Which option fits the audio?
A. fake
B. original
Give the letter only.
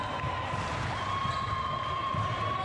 B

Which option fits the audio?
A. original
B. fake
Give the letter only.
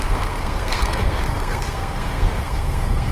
B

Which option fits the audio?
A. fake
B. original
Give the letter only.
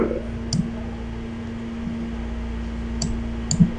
B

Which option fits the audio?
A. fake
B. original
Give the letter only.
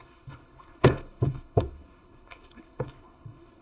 A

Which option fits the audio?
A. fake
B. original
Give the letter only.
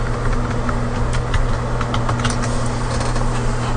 B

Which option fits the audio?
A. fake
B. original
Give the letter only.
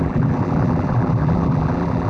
A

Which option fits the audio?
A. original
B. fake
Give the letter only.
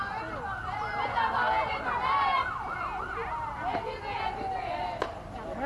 A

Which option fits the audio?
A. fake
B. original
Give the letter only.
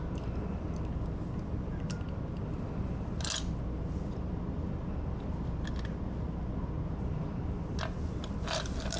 B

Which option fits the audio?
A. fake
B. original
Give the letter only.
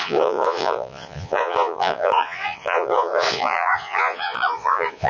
A